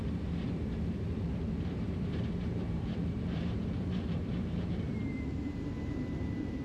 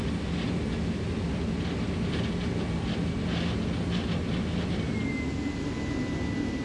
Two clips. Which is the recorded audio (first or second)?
second